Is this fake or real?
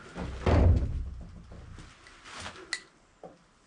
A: real